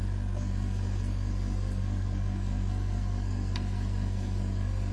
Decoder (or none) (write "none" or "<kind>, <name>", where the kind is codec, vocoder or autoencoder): codec, SNAC